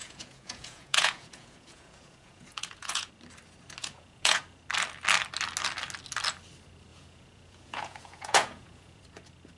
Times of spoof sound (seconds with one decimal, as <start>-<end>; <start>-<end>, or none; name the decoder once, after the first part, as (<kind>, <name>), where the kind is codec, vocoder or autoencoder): 0.0-3.1 (vocoder, Vocos); 3.8-4.4; 6.9-9.0